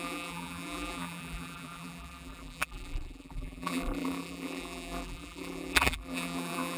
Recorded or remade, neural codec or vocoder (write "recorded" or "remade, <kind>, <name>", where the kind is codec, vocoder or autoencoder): remade, vocoder, BigVGAN v2